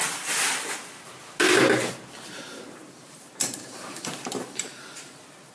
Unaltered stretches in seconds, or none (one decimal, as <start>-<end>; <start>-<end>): 0.0-3.0